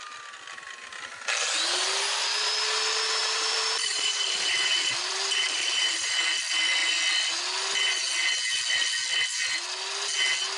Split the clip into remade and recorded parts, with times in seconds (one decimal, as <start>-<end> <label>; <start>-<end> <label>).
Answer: 0.0-3.2 recorded; 3.2-6.1 remade; 6.1-10.6 recorded

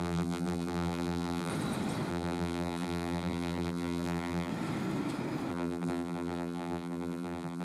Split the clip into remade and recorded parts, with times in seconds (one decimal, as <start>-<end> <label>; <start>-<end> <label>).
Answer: 0.0-1.5 remade; 1.5-2.1 recorded; 2.1-4.5 remade; 4.5-5.5 recorded; 5.5-7.6 remade

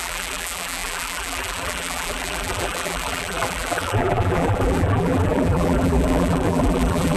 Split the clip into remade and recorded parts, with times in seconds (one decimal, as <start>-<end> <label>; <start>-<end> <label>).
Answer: 0.0-7.2 remade

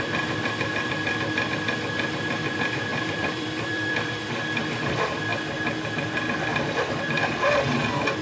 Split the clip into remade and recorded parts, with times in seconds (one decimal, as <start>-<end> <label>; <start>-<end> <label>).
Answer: 0.0-2.9 recorded; 2.9-4.2 remade; 4.2-6.5 recorded; 6.5-7.3 remade; 7.3-8.2 recorded

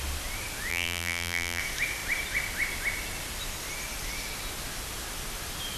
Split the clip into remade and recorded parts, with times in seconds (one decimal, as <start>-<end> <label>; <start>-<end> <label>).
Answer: 0.0-0.7 recorded; 0.7-1.6 remade; 1.6-5.8 recorded

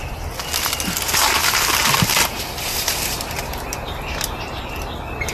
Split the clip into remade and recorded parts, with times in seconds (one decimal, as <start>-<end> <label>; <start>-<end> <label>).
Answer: 0.0-1.4 recorded; 1.4-4.6 remade; 4.6-5.3 recorded